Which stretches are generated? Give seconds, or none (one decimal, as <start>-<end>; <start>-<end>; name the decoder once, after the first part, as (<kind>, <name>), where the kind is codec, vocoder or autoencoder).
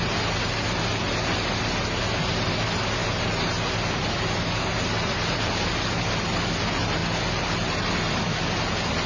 none